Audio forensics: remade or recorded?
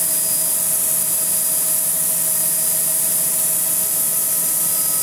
recorded